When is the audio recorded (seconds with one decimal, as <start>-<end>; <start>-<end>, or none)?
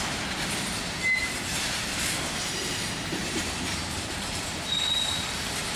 0.0-1.2; 4.5-5.8